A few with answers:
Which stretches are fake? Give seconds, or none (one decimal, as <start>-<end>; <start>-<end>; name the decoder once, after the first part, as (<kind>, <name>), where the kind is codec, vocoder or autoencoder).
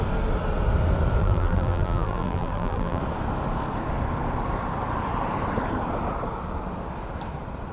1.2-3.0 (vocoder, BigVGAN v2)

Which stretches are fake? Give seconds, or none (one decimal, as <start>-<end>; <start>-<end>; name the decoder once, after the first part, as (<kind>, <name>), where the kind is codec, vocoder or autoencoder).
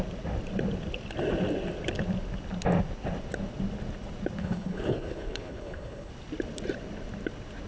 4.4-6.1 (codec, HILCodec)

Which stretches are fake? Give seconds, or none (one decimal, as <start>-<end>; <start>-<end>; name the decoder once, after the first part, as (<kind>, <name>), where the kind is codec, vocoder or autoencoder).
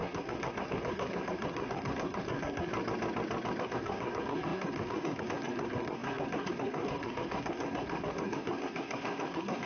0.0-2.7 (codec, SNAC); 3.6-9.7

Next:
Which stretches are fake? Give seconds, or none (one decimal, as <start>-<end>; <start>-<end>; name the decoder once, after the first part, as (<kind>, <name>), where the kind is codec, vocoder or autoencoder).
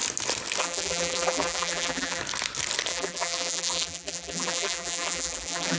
0.6-2.2 (vocoder, BigVGAN v2); 2.9-5.8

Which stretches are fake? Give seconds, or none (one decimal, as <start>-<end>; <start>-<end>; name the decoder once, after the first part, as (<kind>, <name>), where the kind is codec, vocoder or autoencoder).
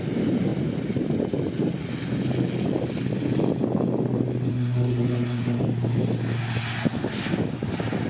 4.5-5.6 (codec, SNAC)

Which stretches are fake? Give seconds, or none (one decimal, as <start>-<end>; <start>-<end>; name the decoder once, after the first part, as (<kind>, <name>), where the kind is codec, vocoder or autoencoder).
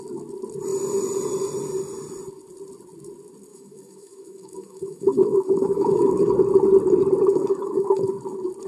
3.5-6.3 (autoencoder, DAC-VAE); 7.3-8.0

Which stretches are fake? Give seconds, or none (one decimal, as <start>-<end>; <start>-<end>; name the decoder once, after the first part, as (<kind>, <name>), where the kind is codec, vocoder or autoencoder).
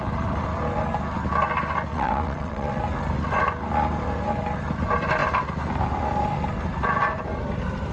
1.9-2.8 (vocoder, WaveNeXt)